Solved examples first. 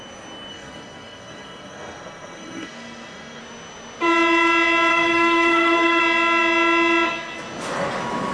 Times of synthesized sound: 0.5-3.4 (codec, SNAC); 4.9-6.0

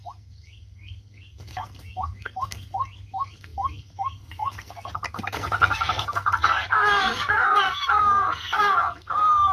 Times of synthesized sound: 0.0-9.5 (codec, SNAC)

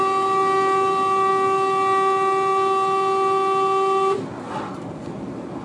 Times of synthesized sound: none

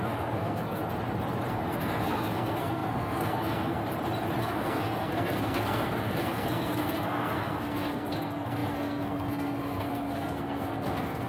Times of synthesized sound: 0.0-0.8 (codec, SNAC); 1.5-3.8; 4.4-11.3

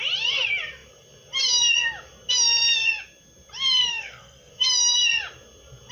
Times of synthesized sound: 3.9-4.5 (codec, SNAC)

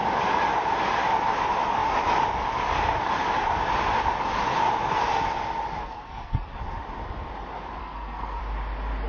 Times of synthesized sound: 5.8-6.6 (codec, SNAC); 7.8-8.4

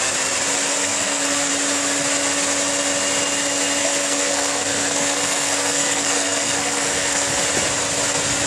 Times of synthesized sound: 0.8-1.5 (codec, SNAC); 3.8-7.3

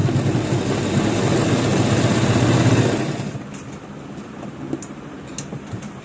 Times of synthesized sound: none